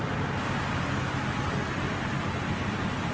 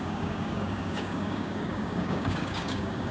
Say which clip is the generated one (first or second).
second